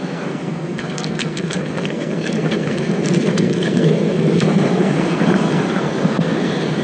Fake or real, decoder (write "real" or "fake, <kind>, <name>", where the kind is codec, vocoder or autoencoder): fake, codec, SNAC